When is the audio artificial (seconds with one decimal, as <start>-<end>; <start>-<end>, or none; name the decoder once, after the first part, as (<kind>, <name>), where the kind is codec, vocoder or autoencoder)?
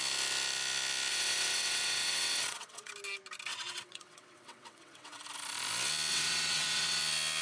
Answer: 1.1-2.9 (vocoder, WaveNeXt); 3.5-5.2; 6.1-7.0